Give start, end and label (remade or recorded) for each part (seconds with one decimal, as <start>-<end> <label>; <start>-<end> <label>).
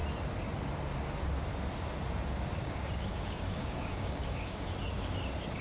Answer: 0.0-2.6 recorded; 2.6-4.7 remade; 4.7-5.6 recorded